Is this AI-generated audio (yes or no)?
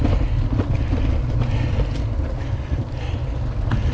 no